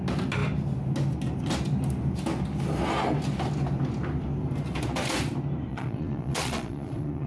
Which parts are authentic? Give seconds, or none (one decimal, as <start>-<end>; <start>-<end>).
0.0-5.7